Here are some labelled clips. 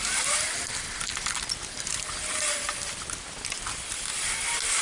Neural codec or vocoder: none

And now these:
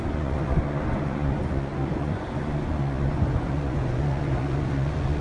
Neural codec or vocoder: vocoder, Vocos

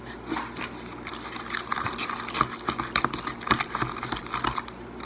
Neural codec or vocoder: none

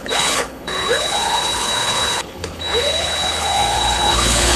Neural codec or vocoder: codec, HILCodec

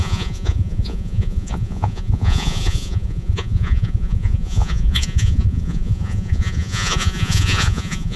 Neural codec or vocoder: vocoder, Vocos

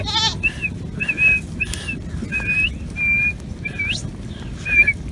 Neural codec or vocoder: none